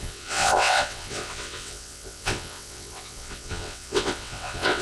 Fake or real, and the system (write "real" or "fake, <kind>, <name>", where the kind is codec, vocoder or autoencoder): fake, vocoder, WaveNeXt